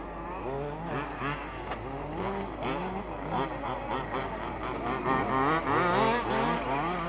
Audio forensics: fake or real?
real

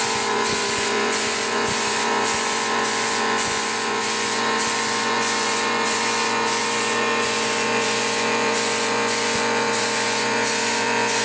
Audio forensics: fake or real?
fake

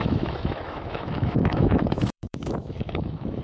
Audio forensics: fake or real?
fake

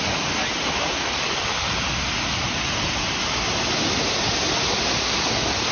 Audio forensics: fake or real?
real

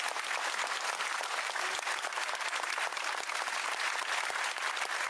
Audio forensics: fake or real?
real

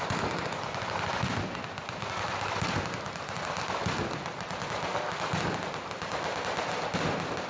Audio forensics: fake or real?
real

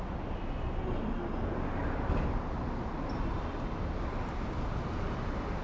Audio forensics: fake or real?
real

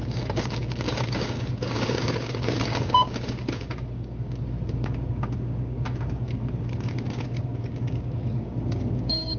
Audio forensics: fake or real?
fake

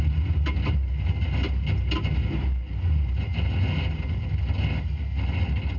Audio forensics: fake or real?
real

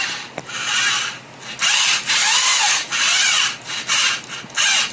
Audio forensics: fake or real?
real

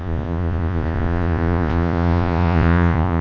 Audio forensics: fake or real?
fake